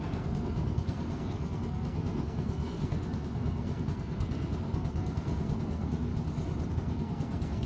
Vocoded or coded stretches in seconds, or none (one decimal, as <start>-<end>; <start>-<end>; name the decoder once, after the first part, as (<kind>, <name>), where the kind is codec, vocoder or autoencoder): 0.0-6.1 (codec, SNAC); 6.7-7.7